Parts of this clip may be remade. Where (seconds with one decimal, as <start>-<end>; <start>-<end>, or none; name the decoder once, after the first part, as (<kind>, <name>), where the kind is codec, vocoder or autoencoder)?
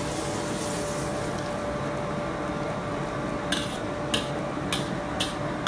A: none